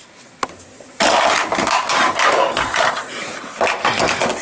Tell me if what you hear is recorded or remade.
recorded